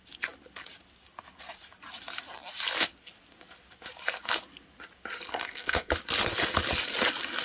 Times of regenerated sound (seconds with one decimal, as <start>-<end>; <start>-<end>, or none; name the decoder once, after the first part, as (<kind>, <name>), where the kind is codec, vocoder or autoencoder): 5.3-5.9 (codec, SNAC)